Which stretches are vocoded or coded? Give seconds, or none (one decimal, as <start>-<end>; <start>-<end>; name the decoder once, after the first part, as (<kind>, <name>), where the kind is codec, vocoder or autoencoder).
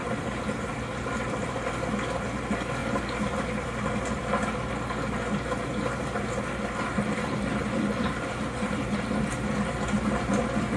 0.0-0.7 (vocoder, BigVGAN v2)